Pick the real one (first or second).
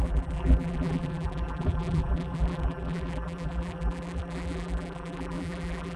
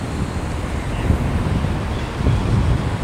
second